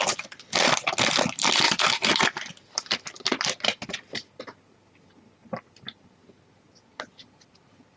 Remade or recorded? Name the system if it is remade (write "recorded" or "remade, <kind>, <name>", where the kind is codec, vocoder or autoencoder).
recorded